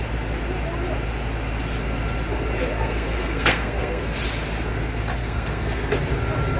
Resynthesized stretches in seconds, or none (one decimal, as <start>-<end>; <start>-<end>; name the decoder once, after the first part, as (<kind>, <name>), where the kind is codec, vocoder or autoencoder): 2.7-4.0 (codec, SNAC); 5.2-5.9